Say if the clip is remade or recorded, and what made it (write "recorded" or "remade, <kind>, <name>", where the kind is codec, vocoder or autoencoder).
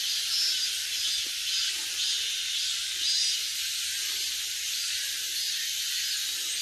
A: recorded